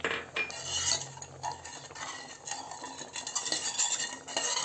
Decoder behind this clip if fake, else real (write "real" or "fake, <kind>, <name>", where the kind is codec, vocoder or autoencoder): real